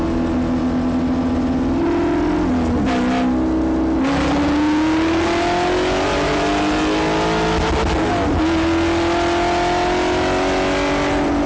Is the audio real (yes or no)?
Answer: yes